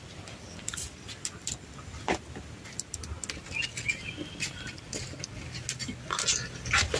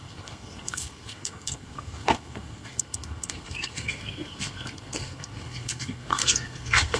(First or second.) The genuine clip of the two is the first